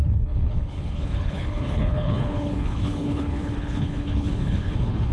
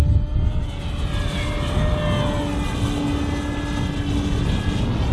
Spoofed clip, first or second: first